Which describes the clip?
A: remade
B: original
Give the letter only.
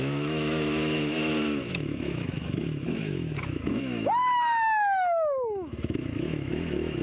A